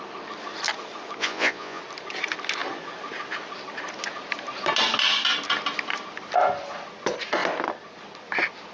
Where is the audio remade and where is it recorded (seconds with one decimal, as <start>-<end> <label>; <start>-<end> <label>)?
0.0-1.2 recorded; 1.2-1.8 remade; 1.8-8.7 recorded